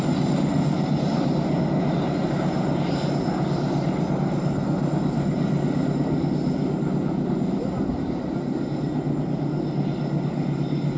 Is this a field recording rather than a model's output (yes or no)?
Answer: yes